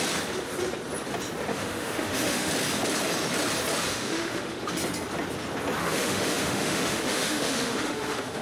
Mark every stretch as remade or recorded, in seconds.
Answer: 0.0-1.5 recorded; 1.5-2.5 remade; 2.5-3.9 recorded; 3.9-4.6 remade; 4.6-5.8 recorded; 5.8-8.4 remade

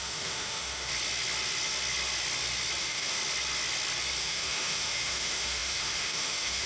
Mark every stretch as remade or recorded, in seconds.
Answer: 0.0-0.9 remade; 0.9-2.8 recorded; 2.8-3.2 remade; 3.2-4.2 recorded; 4.2-6.7 remade

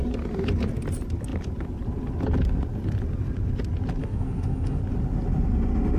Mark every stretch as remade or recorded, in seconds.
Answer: 0.0-4.0 recorded; 4.0-4.8 remade; 4.8-6.0 recorded

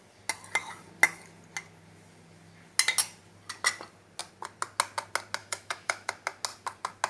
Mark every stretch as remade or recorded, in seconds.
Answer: 0.0-5.4 recorded; 5.4-6.1 remade; 6.1-7.1 recorded

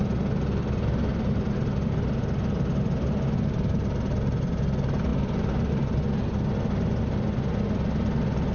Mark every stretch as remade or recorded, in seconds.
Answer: 0.0-8.5 recorded

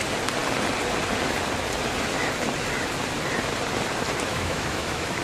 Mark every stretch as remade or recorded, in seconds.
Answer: 0.0-4.3 recorded; 4.3-5.2 remade